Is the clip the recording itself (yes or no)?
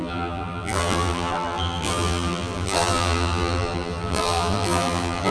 no